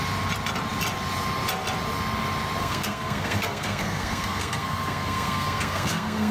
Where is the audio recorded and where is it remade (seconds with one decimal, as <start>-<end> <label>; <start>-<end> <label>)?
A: 0.0-2.6 recorded; 2.6-6.3 remade